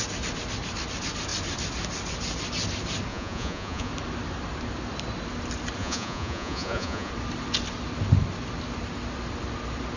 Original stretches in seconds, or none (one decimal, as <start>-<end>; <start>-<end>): 0.0-3.1; 3.9-5.8; 7.1-10.0